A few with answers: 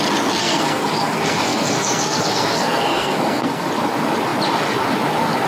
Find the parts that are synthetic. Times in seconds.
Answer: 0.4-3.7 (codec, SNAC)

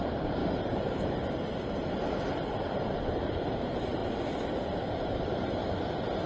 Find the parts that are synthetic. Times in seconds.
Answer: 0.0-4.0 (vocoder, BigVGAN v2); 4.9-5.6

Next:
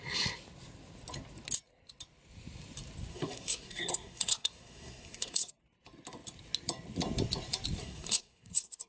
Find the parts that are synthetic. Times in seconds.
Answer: 3.1-5.5 (codec, SNAC); 7.8-8.9

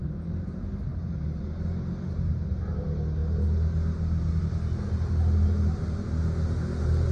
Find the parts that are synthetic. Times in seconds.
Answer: none

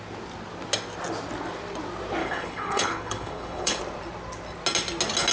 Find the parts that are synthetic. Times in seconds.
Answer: 2.2-3.8 (codec, HILCodec)

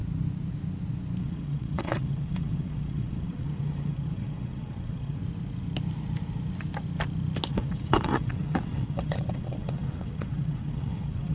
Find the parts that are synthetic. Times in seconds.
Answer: 1.2-5.2 (vocoder, WaveNeXt); 7.5-11.3